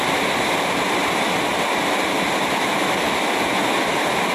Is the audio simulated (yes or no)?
no